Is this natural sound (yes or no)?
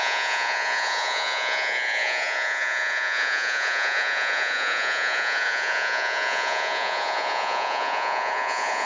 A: no